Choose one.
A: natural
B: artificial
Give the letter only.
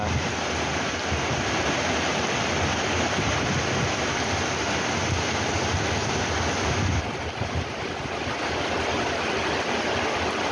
A